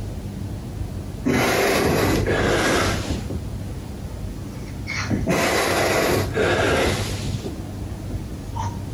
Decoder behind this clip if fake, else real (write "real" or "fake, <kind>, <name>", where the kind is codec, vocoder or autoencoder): real